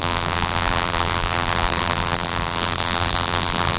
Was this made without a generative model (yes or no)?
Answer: no